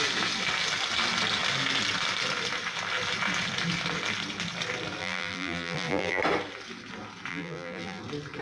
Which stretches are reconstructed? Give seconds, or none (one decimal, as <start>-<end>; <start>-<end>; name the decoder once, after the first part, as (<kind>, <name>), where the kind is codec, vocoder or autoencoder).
5.0-6.2 (vocoder, BigVGAN v2); 7.3-8.0